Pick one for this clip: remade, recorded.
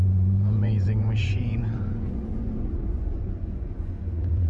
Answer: remade